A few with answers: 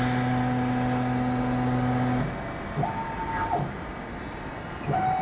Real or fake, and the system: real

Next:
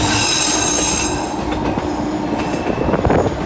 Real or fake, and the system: real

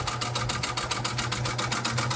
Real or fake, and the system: real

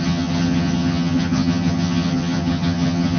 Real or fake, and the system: fake, vocoder, HiFi-GAN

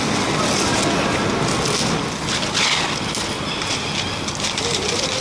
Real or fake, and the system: real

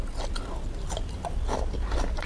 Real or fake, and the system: real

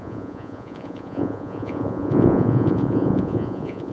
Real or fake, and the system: fake, vocoder, Vocos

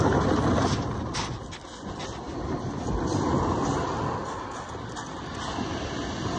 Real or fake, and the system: real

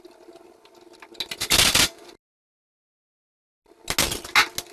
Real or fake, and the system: real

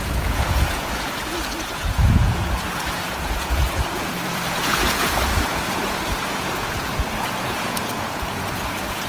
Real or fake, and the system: fake, vocoder, Vocos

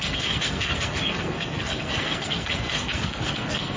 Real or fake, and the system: fake, codec, SNAC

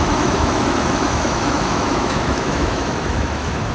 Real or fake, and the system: fake, autoencoder, DAC-VAE